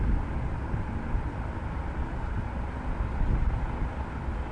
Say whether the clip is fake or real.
real